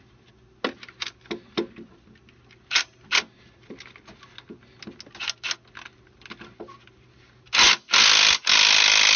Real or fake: real